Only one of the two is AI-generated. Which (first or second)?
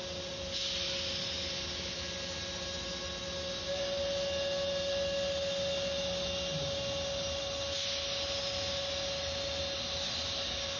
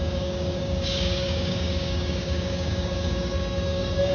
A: second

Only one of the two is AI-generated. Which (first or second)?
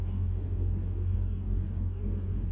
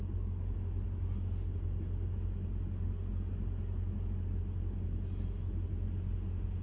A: first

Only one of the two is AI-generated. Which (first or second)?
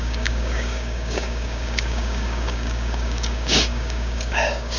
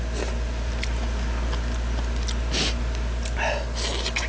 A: first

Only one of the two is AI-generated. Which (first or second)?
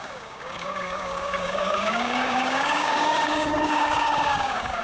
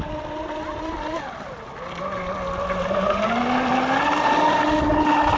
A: first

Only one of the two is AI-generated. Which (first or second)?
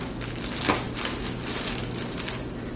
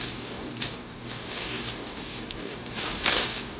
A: second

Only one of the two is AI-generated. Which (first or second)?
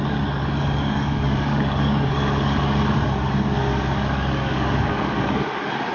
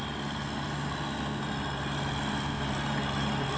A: first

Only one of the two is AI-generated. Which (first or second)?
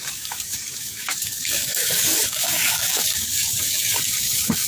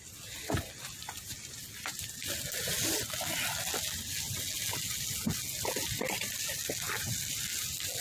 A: first